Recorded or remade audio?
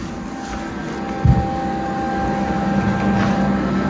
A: recorded